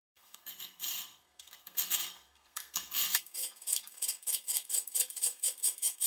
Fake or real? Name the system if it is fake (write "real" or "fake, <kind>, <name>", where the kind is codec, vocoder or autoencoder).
fake, codec, SNAC